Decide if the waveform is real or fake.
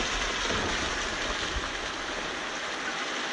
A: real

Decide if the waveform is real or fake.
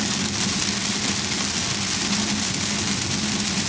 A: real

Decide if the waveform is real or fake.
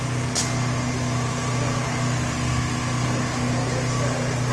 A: real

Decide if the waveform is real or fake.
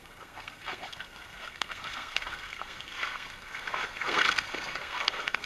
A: fake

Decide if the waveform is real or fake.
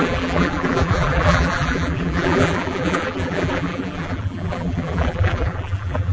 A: fake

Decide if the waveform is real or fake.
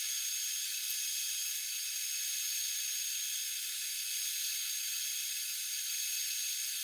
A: real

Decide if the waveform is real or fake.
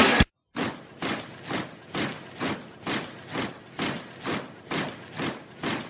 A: real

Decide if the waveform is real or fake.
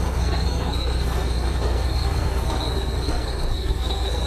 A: fake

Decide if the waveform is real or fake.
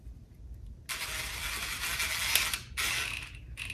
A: real